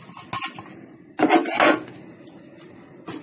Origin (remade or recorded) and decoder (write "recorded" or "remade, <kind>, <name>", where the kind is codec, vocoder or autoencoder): recorded